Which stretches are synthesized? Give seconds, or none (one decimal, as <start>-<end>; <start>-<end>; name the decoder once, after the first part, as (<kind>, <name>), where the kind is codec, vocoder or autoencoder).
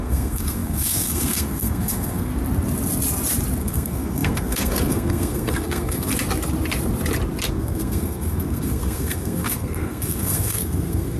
0.0-2.3 (codec, SNAC); 3.6-6.1; 7.5-11.2